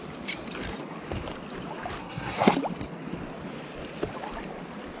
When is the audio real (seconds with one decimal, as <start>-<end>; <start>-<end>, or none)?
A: 0.0-2.0; 2.5-5.0

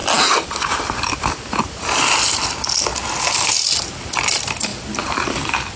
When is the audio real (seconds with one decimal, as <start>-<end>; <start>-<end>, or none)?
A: 0.0-5.8

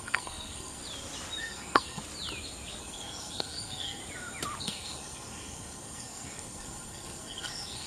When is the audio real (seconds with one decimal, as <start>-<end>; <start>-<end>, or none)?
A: 0.8-1.4; 2.0-2.8; 4.0-4.6

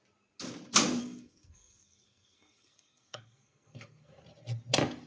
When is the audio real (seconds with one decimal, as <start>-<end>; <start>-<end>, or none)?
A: 0.0-1.0; 4.1-5.1

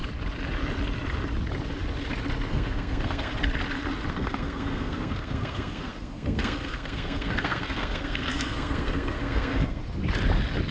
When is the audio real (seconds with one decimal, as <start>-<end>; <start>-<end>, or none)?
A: 0.0-2.5; 3.3-4.1; 9.8-10.7